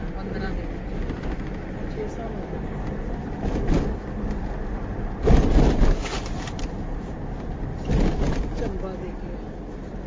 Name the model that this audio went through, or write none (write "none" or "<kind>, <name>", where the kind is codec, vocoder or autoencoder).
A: none